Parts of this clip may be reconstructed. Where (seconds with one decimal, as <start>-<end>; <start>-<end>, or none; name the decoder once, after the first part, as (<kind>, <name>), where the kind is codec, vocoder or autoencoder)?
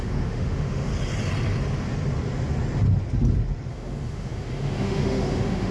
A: 0.0-0.9 (autoencoder, DAC-VAE); 3.7-5.7